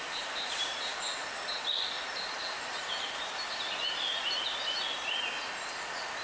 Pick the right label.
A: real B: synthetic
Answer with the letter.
A